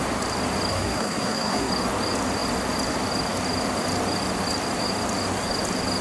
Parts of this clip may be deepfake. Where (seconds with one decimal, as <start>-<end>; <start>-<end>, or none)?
0.7-1.7